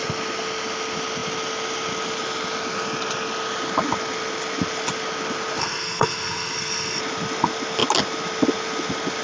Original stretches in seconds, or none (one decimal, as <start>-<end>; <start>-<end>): 0.0-5.6; 7.0-9.2